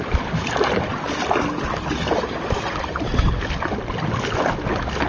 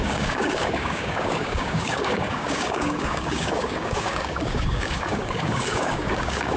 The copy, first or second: second